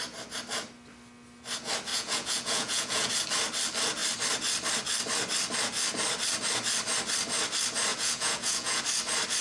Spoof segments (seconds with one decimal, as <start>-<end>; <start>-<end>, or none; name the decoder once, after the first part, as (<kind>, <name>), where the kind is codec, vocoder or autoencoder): 1.9-3.1 (vocoder, Vocos); 7.9-8.8